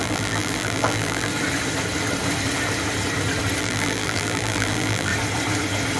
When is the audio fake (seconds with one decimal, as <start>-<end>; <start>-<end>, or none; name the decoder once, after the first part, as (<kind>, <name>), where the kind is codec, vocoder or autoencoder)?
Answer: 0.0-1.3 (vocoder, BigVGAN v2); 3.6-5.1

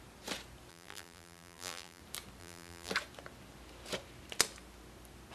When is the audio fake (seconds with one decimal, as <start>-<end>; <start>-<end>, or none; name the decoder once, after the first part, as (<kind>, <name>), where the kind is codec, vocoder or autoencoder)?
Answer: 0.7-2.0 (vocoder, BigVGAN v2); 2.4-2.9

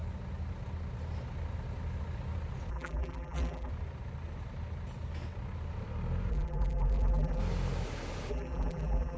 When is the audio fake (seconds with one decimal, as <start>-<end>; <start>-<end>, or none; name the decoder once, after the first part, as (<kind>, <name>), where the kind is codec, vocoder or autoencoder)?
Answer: 2.7-3.7 (vocoder, BigVGAN v2); 6.3-7.4; 8.3-9.2

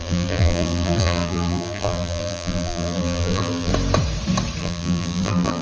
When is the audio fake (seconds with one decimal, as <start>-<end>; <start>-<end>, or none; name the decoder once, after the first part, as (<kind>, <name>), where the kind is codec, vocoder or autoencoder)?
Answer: 0.0-3.7 (vocoder, BigVGAN v2); 4.6-5.6

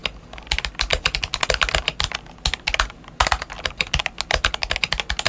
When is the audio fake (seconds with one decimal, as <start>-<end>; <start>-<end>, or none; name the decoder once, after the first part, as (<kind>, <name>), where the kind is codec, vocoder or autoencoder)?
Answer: none

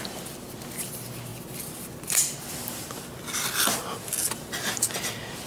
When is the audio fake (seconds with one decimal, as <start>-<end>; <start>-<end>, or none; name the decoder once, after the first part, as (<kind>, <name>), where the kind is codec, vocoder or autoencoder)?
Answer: none

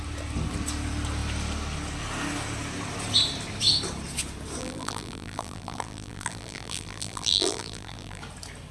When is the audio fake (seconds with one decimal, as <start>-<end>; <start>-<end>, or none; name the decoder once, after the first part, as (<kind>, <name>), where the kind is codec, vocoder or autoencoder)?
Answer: 4.6-8.2 (vocoder, BigVGAN v2)